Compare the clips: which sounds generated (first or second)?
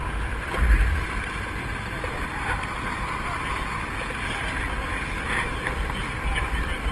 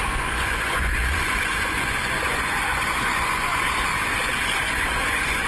second